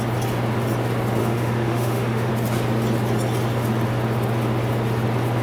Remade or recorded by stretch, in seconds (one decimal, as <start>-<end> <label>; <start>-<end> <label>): 0.0-1.2 recorded; 1.2-2.3 remade; 2.3-5.4 recorded